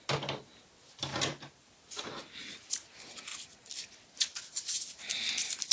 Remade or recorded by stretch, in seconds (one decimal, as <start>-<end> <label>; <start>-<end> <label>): 0.0-1.1 recorded; 1.1-2.7 remade; 2.7-5.7 recorded